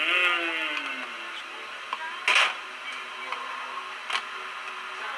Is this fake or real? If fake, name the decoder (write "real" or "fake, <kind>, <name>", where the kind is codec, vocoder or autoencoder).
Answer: real